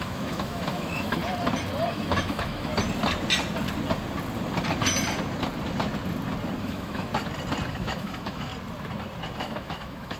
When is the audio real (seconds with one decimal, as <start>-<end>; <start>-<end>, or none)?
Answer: 1.2-1.9; 2.7-6.6; 7.1-7.7; 8.5-9.4

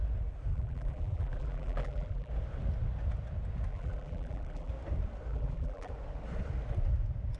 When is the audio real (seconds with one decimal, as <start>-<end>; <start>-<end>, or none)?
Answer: 0.0-0.5; 2.3-3.7; 4.7-5.3; 5.9-7.4

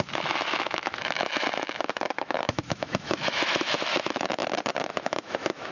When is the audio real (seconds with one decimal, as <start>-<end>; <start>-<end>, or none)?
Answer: 4.4-4.9

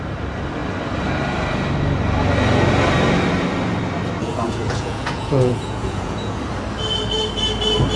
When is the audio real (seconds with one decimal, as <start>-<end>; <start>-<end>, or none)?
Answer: 0.0-4.2; 6.4-8.0

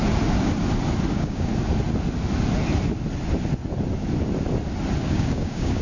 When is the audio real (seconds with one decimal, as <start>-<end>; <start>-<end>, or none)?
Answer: 0.0-1.1; 1.5-5.0

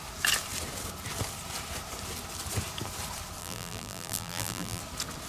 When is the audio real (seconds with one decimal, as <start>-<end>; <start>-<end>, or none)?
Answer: 0.0-3.4; 4.8-5.3